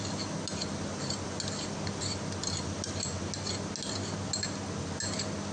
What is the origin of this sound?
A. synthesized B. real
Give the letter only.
B